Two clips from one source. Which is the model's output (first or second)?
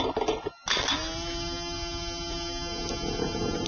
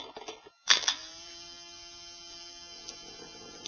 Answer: second